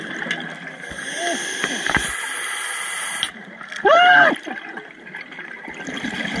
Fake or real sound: real